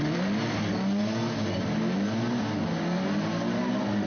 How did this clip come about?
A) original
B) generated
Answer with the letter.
A